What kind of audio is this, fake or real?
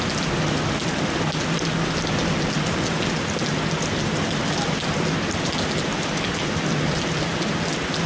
real